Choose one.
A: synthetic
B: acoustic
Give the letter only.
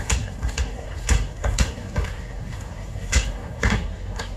A